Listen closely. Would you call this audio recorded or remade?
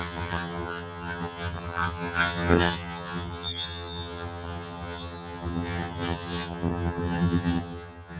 remade